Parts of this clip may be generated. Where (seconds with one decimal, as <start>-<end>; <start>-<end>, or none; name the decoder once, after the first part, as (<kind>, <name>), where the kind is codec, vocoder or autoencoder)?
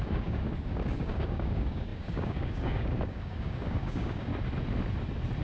0.0-4.3 (codec, DAC)